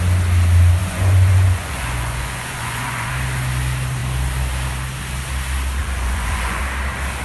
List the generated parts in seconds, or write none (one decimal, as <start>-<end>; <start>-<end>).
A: 0.8-3.1; 5.8-6.6